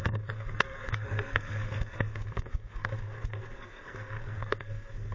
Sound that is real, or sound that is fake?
fake